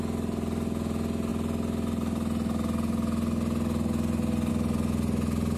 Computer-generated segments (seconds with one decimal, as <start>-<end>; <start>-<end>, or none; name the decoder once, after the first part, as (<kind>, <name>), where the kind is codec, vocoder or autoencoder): none